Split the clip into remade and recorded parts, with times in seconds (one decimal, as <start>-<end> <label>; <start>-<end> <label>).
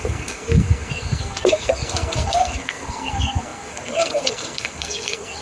0.0-5.4 remade